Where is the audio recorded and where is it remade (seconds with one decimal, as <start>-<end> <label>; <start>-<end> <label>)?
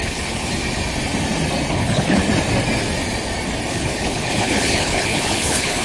0.0-0.5 remade; 0.5-1.7 recorded; 1.7-2.2 remade; 2.2-3.7 recorded; 3.7-5.8 remade